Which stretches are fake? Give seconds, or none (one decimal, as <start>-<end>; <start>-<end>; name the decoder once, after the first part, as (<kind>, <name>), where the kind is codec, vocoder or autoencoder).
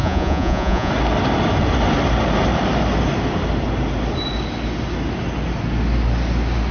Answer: 0.0-0.9 (vocoder, Vocos)